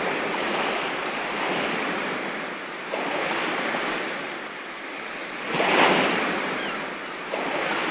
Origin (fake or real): fake